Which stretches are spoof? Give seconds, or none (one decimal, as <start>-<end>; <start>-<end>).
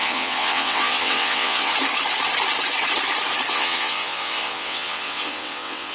0.0-1.7; 3.5-5.9